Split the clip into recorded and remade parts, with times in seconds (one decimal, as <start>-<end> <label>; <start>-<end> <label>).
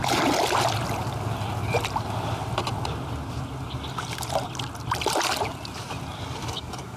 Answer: 0.0-6.4 recorded; 6.4-7.0 remade